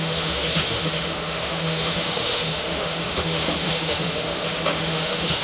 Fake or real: fake